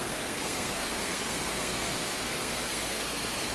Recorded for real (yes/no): no